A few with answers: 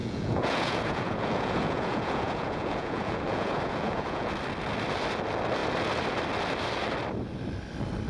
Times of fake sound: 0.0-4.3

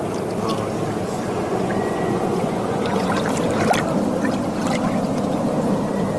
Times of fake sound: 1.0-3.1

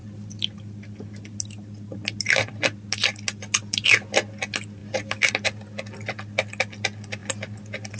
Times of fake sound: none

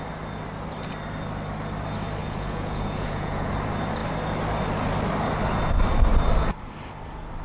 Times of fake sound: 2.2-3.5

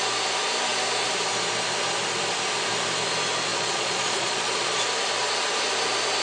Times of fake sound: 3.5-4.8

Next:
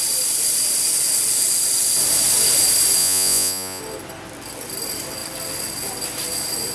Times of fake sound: 3.0-3.8